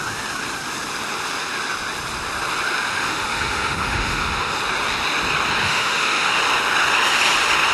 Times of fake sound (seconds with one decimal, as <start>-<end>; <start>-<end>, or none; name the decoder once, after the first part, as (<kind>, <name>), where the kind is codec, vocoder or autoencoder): 2.9-4.6 (autoencoder, DAC-VAE); 5.6-6.4